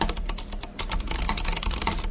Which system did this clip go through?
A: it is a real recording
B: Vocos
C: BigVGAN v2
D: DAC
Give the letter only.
A